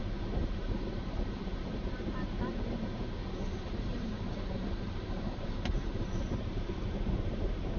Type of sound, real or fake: fake